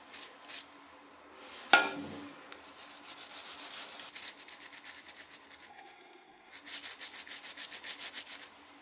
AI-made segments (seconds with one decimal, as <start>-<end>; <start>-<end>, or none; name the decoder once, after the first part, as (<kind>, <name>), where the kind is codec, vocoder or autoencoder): 5.7-6.5 (codec, SNAC)